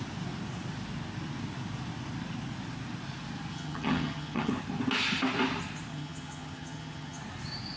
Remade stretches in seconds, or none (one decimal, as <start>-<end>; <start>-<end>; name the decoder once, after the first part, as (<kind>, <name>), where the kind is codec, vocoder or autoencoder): 3.5-4.5 (vocoder, HiFi-GAN); 5.9-7.2